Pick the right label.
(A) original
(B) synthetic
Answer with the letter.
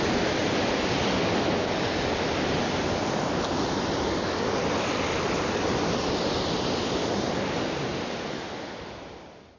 A